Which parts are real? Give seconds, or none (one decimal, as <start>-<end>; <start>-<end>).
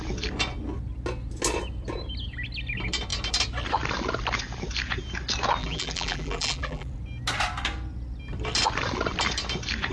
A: 0.0-5.6; 6.9-9.9